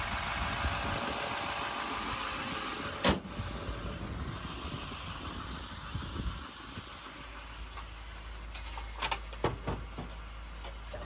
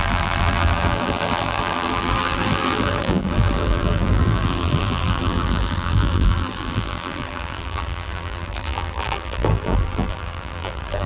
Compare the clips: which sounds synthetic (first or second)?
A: second